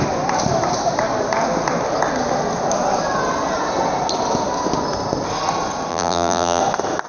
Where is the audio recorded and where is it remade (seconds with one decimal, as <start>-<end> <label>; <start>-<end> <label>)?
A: 0.0-5.9 recorded; 5.9-6.6 remade; 6.6-7.1 recorded